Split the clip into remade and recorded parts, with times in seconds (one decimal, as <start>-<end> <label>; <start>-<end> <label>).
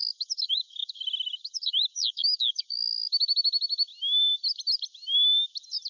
0.0-3.1 remade; 3.1-5.9 recorded